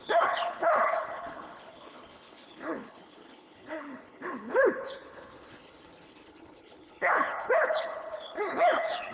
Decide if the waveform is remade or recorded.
remade